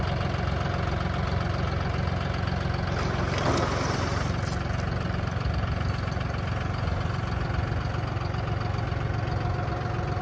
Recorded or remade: recorded